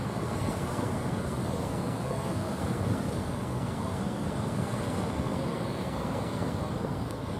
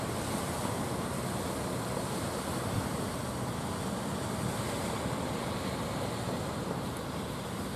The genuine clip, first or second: second